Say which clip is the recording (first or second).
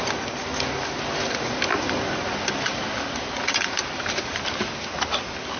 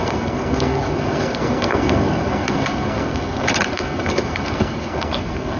first